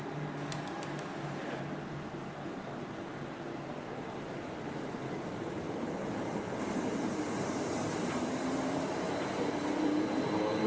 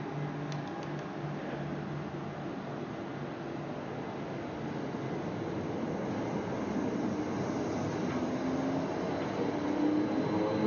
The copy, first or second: first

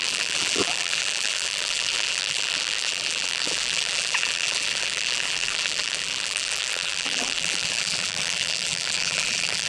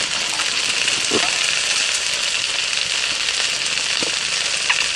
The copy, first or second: first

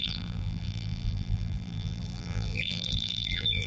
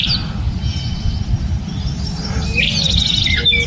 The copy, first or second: first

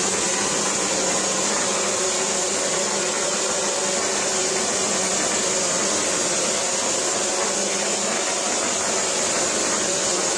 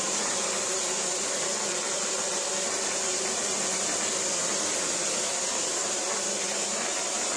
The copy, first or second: second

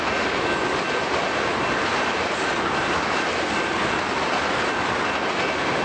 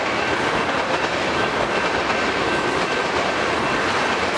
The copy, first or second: second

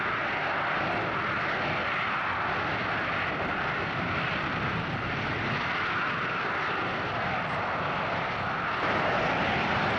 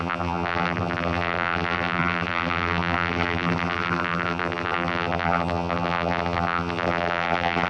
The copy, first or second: second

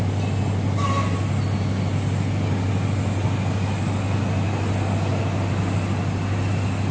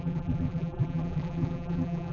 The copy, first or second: second